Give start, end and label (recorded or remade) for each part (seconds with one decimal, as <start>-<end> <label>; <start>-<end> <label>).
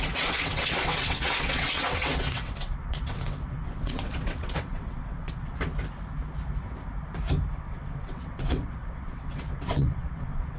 0.0-5.7 remade; 5.7-7.5 recorded; 7.5-10.6 remade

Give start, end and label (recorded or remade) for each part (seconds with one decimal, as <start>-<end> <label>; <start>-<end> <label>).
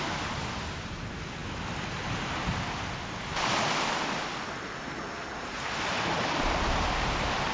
0.0-7.5 recorded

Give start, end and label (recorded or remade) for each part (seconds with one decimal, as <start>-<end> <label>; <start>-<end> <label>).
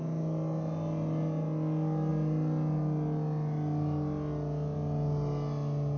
0.0-6.0 recorded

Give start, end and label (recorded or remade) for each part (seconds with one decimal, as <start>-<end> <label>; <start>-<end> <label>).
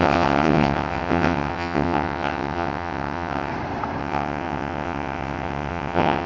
0.0-3.5 remade; 3.5-4.0 recorded; 4.0-6.3 remade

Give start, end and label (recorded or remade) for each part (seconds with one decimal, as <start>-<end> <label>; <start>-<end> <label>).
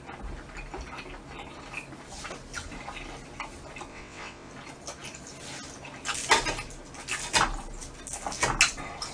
0.0-3.9 recorded; 3.9-4.5 remade; 4.5-9.1 recorded